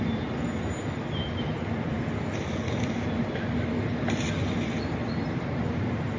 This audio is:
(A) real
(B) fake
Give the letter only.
A